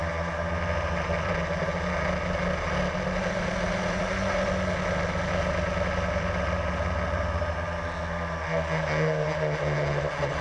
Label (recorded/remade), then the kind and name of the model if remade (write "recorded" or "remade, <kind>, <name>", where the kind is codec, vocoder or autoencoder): recorded